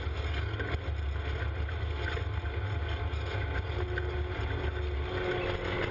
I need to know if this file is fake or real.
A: real